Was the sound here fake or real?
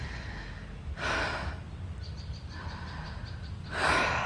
real